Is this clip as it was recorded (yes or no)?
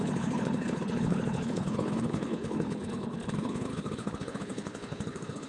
no